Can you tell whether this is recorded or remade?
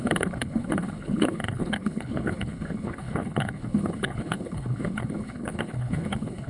remade